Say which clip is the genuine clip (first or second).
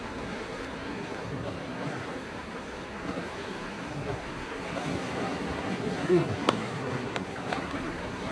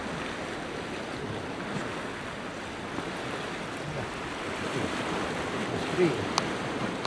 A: second